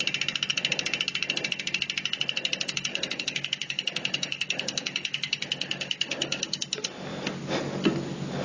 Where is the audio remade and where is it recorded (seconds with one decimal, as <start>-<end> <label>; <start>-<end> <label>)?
0.0-2.9 recorded; 2.9-6.6 remade; 6.6-8.4 recorded